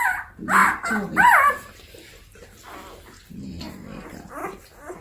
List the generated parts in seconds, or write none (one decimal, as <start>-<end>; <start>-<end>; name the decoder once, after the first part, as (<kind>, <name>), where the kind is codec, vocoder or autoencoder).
none